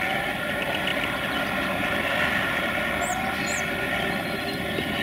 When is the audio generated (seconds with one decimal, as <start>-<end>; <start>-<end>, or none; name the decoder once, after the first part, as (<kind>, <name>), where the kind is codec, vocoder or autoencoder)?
none